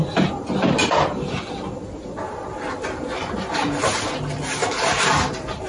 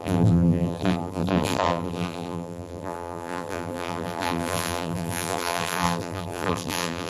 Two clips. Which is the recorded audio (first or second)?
first